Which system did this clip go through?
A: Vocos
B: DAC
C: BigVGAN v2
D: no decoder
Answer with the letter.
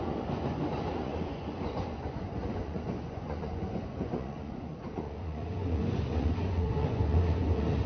A